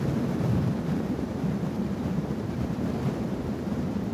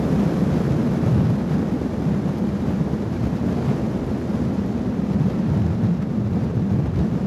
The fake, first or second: first